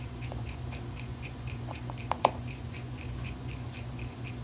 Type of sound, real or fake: fake